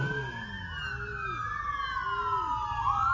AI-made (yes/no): no